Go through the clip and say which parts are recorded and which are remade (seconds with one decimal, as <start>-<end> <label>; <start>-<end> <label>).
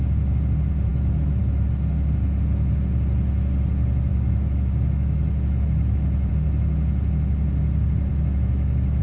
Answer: 0.0-0.9 recorded; 0.9-1.4 remade; 1.4-4.1 recorded; 4.1-6.3 remade; 6.3-8.1 recorded; 8.1-9.0 remade